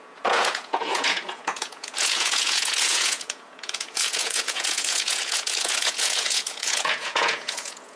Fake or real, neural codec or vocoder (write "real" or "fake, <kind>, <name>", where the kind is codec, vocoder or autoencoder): fake, vocoder, Vocos